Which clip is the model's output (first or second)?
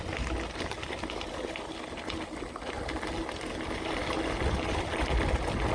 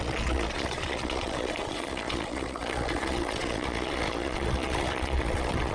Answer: second